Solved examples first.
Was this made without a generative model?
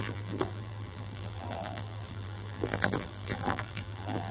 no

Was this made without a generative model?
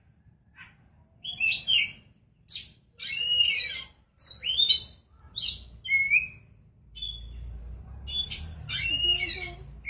yes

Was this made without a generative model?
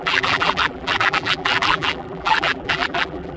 no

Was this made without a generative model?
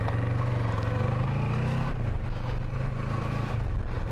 yes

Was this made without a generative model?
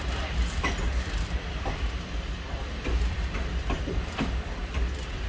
no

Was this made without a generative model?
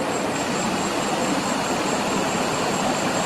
no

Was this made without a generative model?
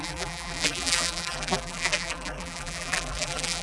no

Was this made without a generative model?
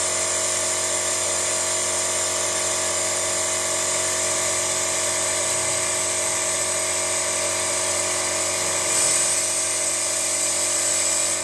yes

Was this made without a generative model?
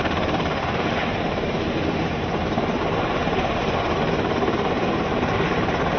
no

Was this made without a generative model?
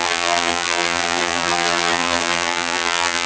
no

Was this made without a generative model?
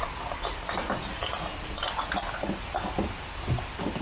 yes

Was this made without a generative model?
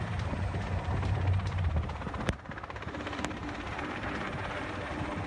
no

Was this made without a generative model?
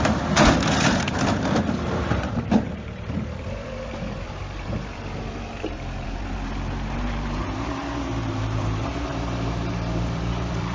no